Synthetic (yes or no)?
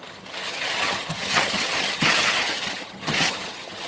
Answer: yes